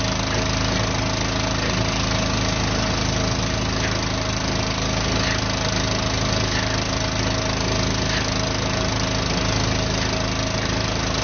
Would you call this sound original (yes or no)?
yes